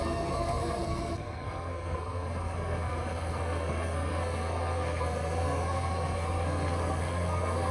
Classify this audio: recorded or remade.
remade